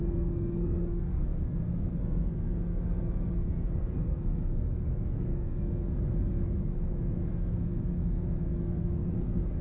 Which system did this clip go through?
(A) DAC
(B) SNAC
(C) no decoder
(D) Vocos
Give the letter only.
B